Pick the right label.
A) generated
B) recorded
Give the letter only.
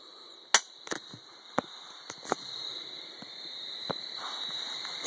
B